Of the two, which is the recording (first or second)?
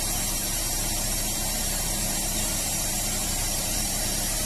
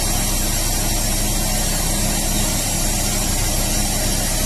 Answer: second